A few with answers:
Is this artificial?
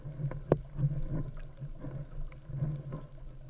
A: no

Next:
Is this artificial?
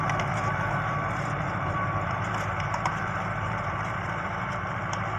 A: yes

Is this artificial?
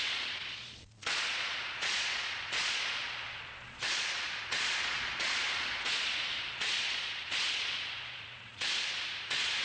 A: yes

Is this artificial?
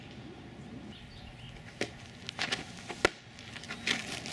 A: no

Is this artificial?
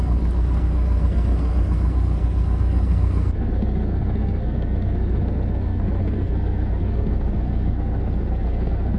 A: yes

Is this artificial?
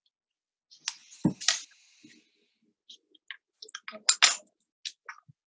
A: no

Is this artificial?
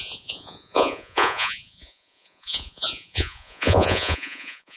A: yes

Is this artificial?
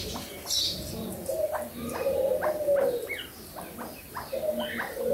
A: yes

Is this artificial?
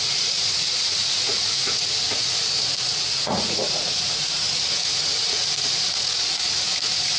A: yes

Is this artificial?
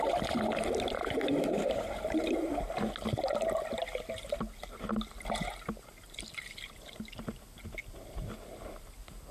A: no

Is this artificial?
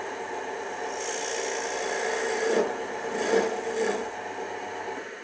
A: no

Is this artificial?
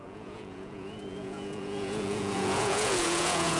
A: yes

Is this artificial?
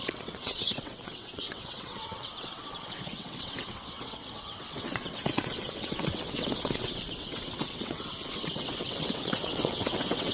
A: yes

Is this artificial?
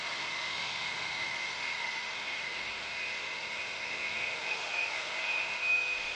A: yes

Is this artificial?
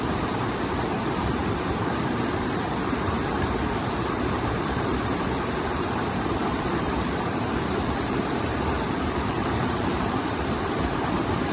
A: yes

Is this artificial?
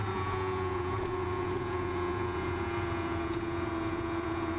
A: yes